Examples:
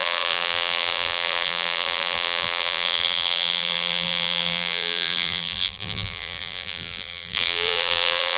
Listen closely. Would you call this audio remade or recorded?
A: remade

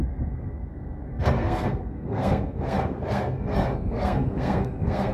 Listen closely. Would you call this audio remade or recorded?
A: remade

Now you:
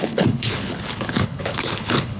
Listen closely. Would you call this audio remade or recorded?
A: remade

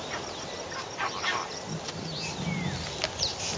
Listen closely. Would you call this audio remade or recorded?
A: recorded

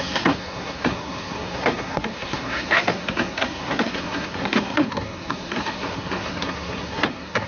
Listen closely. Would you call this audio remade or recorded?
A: remade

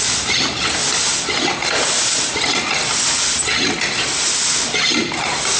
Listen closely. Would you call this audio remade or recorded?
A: recorded